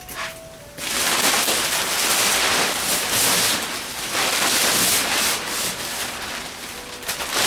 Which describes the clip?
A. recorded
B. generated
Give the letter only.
A